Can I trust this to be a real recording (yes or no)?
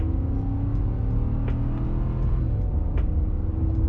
yes